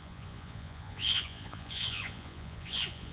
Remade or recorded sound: remade